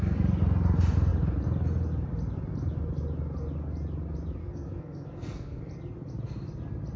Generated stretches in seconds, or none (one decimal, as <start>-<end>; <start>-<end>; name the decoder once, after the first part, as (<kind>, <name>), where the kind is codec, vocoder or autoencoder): 4.4-5.6 (codec, SNAC)